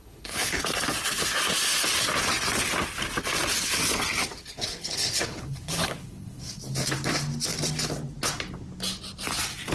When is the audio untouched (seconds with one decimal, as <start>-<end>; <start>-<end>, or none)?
0.6-4.4; 6.6-9.7